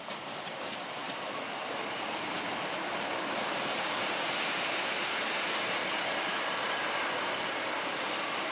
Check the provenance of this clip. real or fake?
real